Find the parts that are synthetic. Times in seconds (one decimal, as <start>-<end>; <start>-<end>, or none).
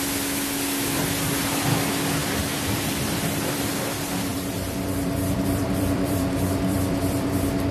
2.2-3.6; 4.3-7.3